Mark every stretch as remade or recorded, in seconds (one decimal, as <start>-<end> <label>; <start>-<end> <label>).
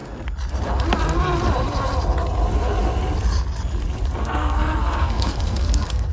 0.0-4.2 recorded; 4.2-6.1 remade